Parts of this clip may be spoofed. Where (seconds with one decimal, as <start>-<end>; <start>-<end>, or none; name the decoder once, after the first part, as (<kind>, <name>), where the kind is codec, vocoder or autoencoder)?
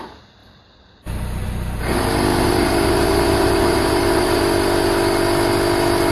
2.3-4.4 (vocoder, BigVGAN v2)